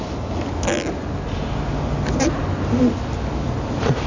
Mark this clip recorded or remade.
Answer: recorded